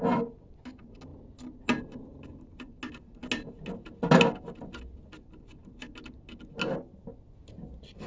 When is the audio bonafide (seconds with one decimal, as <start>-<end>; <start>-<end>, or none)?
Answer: 0.0-8.1